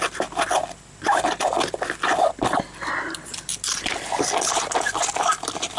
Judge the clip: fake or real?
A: real